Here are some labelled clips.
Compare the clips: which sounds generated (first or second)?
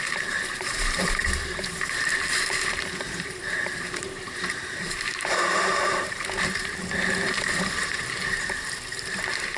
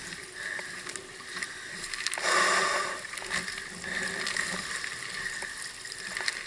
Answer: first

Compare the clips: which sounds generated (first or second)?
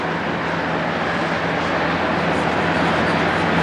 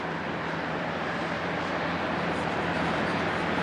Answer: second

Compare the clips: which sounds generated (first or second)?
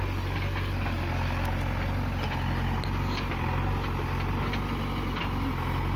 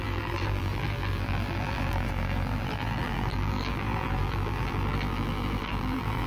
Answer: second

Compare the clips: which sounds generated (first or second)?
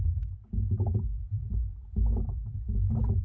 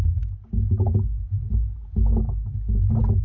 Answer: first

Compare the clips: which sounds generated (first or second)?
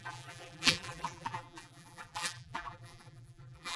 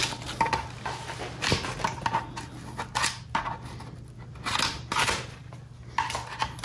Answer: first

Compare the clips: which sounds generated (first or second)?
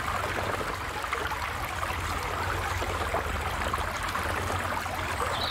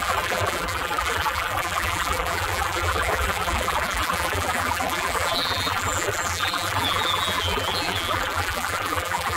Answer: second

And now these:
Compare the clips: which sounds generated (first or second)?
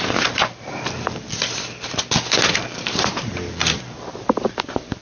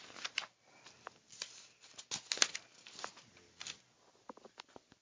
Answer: first